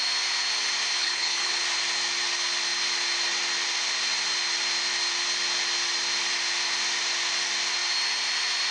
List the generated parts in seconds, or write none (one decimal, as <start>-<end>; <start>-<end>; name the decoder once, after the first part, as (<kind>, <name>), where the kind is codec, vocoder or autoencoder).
1.0-1.6 (codec, HILCodec)